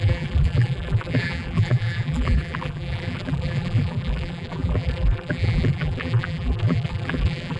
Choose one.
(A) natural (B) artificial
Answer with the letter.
B